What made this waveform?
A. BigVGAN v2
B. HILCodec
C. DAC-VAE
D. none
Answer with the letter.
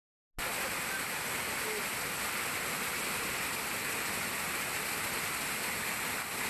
D